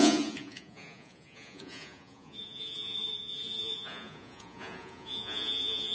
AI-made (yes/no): yes